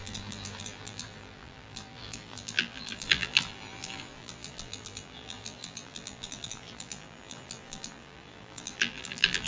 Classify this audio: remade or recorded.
remade